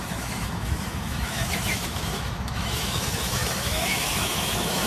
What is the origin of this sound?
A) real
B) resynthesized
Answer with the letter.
B